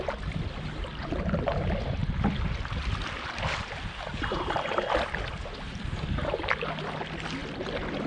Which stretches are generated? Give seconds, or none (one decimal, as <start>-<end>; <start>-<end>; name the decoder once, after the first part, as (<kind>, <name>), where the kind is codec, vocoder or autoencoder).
none